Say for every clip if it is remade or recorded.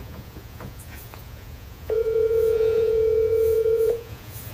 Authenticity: remade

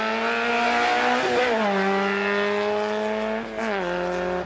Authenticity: recorded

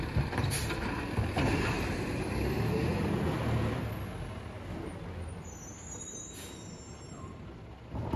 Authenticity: recorded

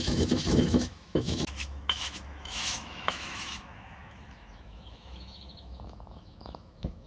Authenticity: remade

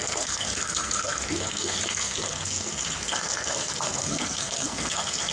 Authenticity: remade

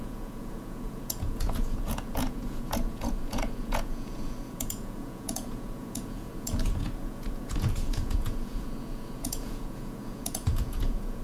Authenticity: remade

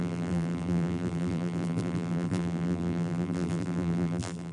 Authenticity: remade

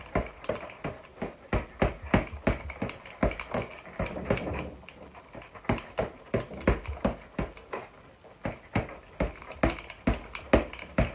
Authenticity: recorded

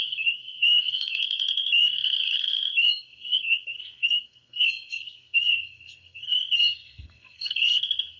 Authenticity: remade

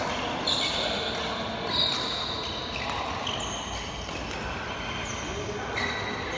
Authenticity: recorded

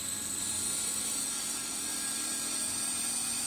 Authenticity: remade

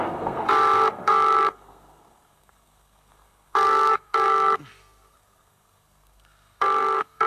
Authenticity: remade